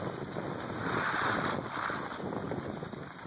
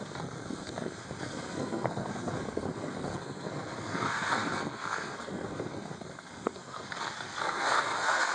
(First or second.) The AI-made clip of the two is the second